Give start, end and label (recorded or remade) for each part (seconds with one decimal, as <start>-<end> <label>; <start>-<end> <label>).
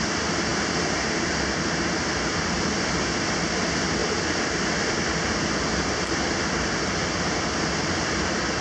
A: 0.0-8.6 recorded